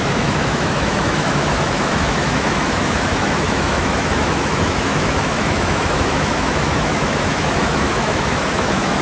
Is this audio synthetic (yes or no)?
yes